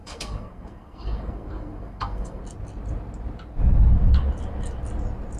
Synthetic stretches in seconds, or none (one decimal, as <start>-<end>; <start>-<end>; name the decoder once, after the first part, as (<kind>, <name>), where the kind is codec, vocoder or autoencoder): 0.0-2.4 (codec, SNAC)